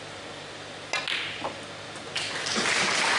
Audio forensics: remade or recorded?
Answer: recorded